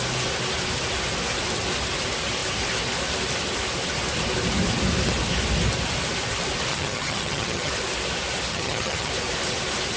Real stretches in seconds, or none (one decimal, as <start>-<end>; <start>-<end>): 0.0-6.7; 7.7-8.5; 9.1-10.0